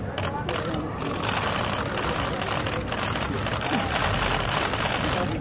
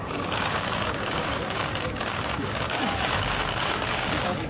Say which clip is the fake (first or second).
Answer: second